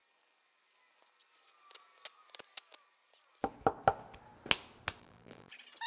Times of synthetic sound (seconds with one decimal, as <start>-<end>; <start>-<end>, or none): 5.0-5.5